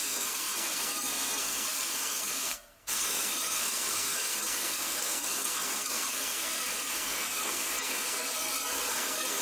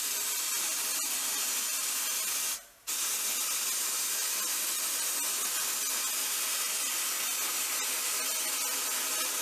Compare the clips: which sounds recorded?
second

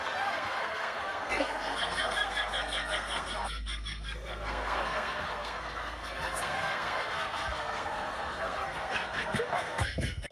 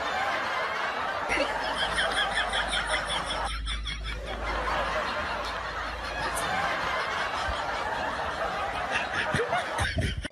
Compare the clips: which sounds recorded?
second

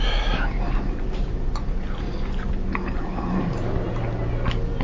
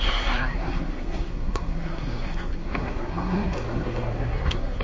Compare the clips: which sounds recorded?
first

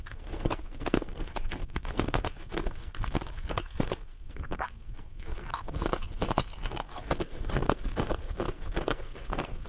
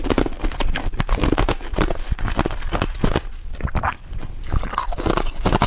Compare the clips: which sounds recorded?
second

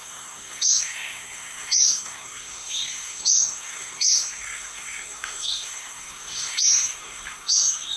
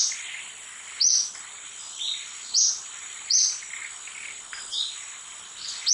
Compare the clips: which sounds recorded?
second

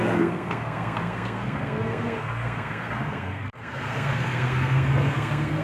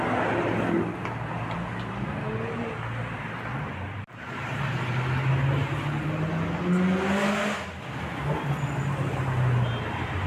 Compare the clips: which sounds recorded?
second